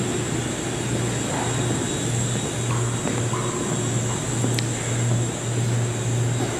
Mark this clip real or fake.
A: real